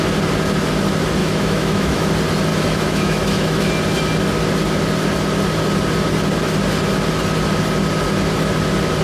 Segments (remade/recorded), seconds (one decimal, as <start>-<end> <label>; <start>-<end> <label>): 0.0-1.2 recorded; 1.2-2.1 remade; 2.1-2.5 recorded; 2.5-3.7 remade; 3.7-9.0 recorded